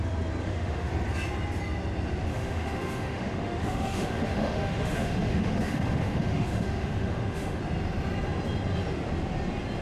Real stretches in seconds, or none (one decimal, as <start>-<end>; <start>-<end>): 0.0-0.4; 0.9-2.3; 7.6-9.8

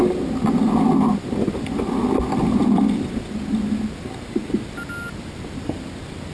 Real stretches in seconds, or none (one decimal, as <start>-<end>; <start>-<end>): 0.0-6.3

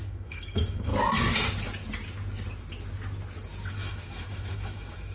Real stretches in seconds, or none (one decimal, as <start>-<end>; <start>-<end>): 0.9-3.7

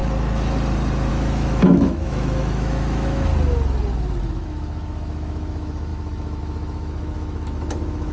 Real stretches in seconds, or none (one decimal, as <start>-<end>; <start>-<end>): 0.0-1.1; 3.3-4.2

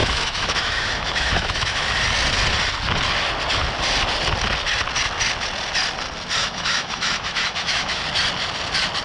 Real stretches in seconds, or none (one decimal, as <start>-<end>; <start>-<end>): 1.8-6.4; 8.0-9.0